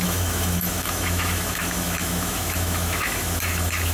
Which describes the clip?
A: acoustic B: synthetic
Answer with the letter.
B